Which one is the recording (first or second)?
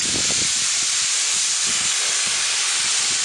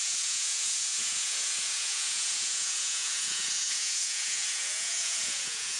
first